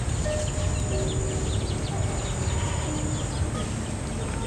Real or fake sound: real